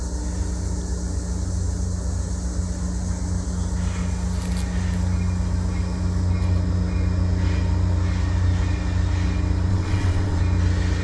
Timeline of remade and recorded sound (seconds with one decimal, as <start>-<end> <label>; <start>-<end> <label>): 0.0-9.7 recorded; 9.7-10.4 remade; 10.4-11.0 recorded